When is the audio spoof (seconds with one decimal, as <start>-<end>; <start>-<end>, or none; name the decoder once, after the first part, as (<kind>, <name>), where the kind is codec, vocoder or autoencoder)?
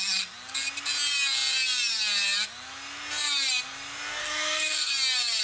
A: 4.2-4.9 (codec, SNAC)